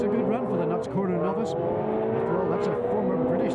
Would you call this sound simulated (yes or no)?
no